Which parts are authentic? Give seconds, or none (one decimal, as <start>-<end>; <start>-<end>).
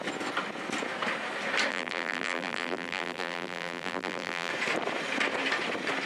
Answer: 0.0-1.7; 4.5-6.1